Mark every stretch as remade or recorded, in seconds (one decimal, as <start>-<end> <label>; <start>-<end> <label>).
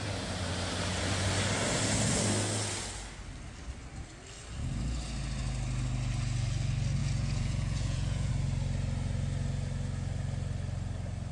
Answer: 0.0-7.0 recorded; 7.0-8.3 remade; 8.3-11.3 recorded